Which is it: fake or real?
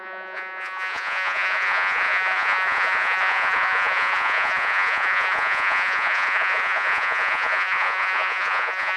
fake